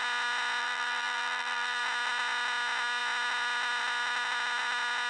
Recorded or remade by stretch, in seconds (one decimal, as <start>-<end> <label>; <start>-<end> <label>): 0.0-0.6 recorded; 0.6-1.8 remade; 1.8-5.1 recorded